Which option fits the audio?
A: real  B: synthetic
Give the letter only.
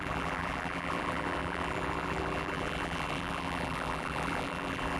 B